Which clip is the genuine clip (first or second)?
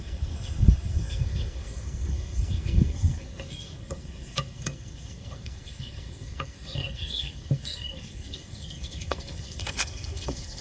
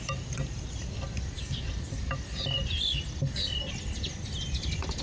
second